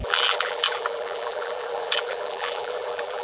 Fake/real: fake